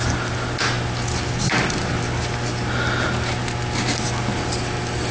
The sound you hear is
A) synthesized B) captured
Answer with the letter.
B